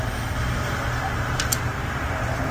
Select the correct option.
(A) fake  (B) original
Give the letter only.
B